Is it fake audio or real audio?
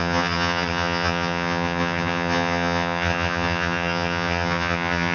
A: fake